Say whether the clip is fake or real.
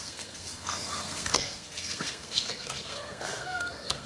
fake